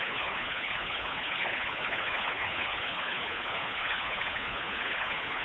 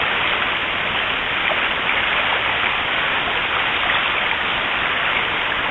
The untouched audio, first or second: second